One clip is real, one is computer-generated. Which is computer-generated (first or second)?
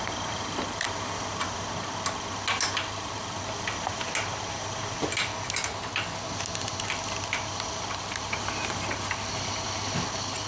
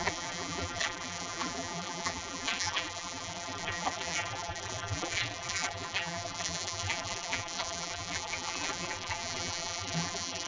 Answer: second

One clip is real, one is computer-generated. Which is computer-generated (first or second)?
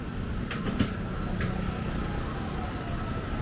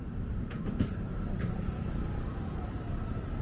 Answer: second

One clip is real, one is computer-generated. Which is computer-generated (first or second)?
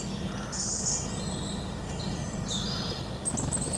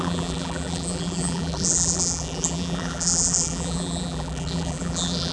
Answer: second